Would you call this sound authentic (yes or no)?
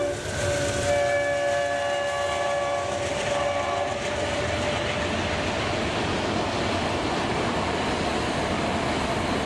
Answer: yes